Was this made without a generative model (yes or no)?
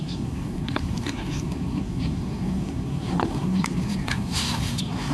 no